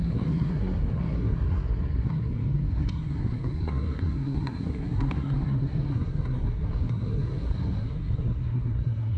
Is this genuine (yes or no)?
no